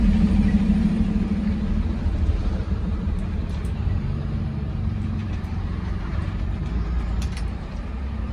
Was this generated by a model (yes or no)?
yes